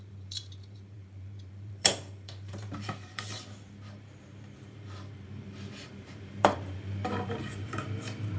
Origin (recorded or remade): remade